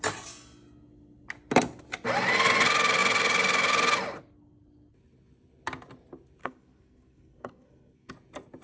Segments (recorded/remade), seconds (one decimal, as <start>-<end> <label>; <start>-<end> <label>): 0.0-6.4 recorded; 6.4-8.1 remade; 8.1-8.6 recorded